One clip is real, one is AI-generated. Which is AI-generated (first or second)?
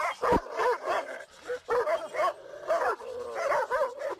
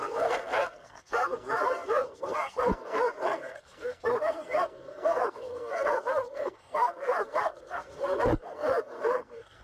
second